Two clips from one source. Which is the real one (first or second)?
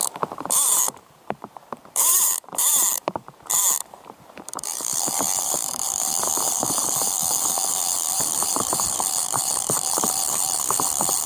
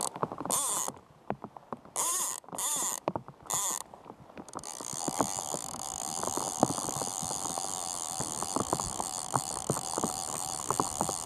second